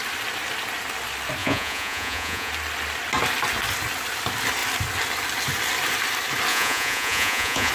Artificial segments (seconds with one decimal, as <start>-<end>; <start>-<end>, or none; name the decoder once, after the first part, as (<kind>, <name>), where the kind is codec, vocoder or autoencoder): 1.4-2.5 (vocoder, Vocos); 6.5-7.7